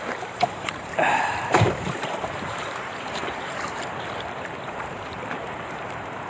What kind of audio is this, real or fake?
fake